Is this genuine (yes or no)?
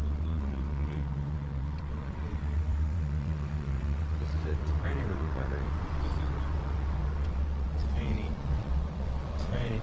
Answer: no